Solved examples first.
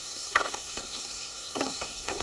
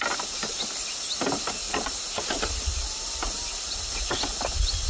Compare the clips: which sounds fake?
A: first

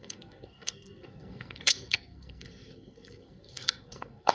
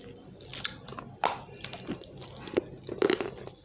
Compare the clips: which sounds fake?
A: first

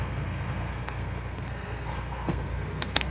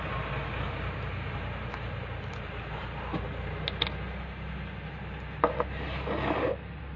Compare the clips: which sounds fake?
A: first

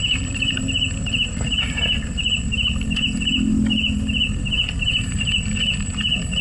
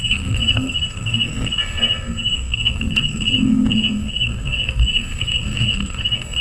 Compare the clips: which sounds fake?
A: second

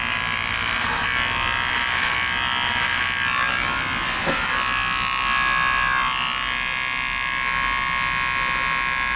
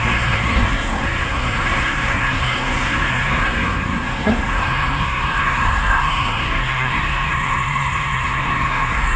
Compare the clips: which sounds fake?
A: second